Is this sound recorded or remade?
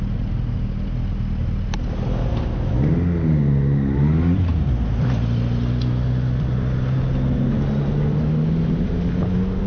recorded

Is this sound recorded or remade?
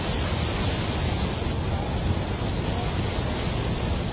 recorded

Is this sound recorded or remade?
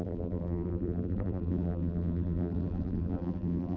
remade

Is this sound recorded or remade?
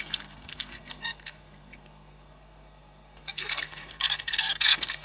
remade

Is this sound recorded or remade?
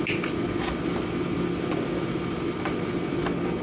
recorded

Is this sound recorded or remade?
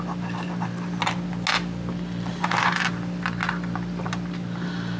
recorded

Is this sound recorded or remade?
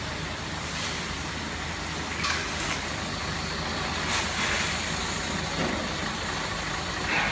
recorded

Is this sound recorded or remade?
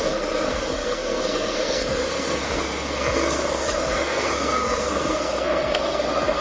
remade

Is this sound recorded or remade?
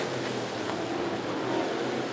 recorded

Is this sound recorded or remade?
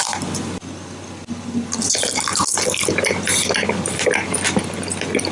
recorded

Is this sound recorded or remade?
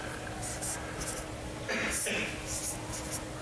recorded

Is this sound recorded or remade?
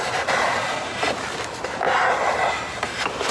recorded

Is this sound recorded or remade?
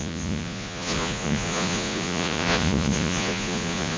remade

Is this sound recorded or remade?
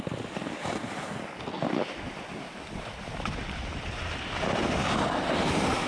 recorded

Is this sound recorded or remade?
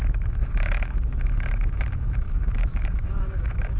remade